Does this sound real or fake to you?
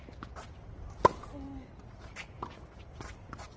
real